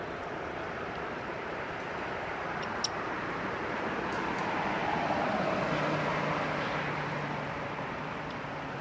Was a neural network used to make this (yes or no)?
no